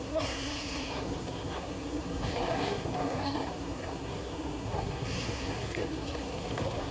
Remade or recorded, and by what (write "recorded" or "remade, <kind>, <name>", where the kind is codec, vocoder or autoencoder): remade, codec, SNAC